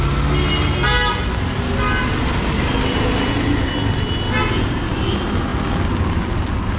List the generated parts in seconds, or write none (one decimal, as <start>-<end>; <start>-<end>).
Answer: none